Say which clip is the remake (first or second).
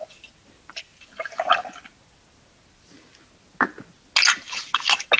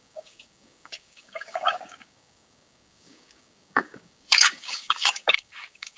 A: second